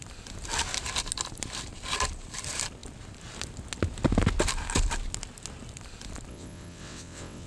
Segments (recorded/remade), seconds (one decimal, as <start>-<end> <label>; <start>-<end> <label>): 0.0-6.3 recorded; 6.3-7.5 remade